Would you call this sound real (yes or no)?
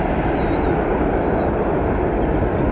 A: yes